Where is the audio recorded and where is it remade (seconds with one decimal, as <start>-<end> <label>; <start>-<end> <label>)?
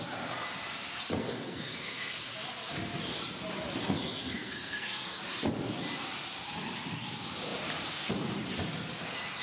0.0-1.2 recorded; 1.2-2.2 remade; 2.2-3.8 recorded; 3.8-5.2 remade; 5.2-9.4 recorded